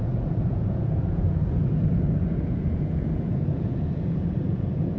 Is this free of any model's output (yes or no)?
no